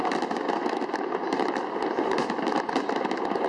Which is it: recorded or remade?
remade